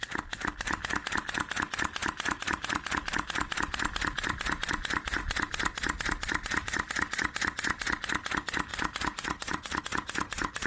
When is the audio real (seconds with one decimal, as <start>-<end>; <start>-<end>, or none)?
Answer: 0.0-8.7; 9.8-10.7